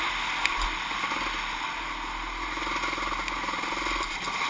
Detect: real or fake real